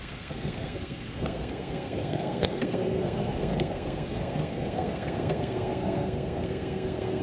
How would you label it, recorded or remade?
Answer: remade